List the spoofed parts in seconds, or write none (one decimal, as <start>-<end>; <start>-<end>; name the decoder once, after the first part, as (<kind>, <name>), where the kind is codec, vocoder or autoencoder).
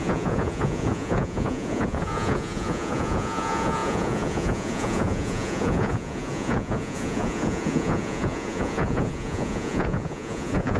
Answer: 0.0-10.8 (vocoder, Vocos)